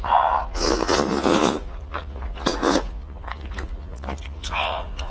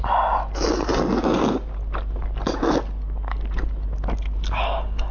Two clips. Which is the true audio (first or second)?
second